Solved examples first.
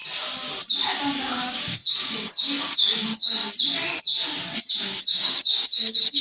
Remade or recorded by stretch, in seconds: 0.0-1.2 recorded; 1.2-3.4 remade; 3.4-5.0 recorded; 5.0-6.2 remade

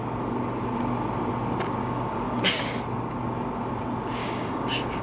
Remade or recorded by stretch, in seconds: 0.0-1.8 recorded; 1.8-2.4 remade; 2.4-4.2 recorded; 4.2-5.0 remade

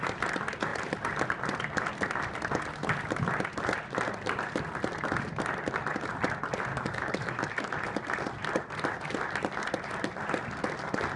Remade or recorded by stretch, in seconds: 0.0-6.7 recorded; 6.7-7.7 remade; 7.7-11.2 recorded

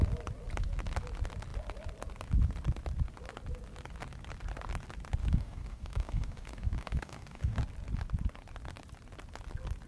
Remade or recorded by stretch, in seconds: 0.0-5.2 recorded; 5.2-7.6 remade; 7.6-9.9 recorded